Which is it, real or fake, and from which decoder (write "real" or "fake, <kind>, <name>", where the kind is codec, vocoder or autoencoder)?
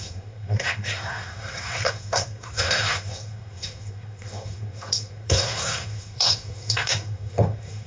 fake, codec, SNAC